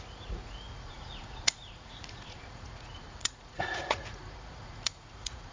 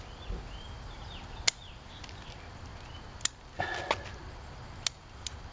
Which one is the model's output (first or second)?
first